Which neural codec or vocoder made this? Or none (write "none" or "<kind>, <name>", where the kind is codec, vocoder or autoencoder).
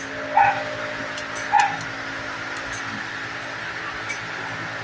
none